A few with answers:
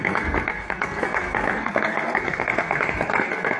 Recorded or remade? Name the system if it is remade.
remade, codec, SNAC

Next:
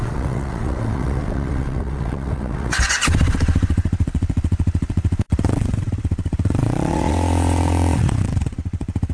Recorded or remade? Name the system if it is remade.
remade, vocoder, WaveNeXt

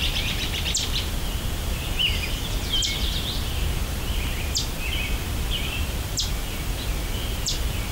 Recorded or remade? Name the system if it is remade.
remade, vocoder, BigVGAN v2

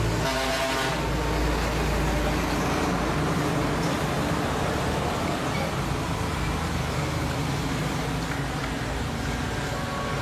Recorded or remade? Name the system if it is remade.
recorded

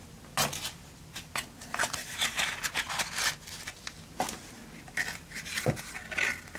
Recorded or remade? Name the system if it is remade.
recorded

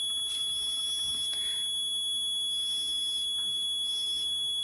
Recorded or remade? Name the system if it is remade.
recorded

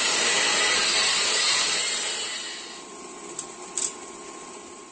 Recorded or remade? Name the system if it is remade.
remade, vocoder, BigVGAN v2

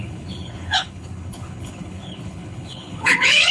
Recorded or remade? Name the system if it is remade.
remade, codec, HILCodec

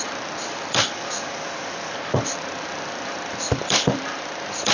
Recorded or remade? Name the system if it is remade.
remade, vocoder, BigVGAN v2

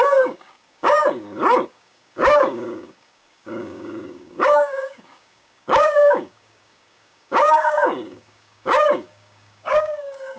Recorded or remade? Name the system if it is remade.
remade, codec, DAC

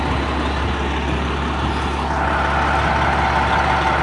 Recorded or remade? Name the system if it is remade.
recorded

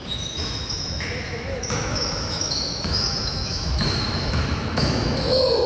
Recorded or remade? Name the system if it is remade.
remade, autoencoder, DAC-VAE